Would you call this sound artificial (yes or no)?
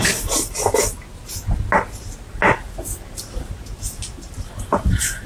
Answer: no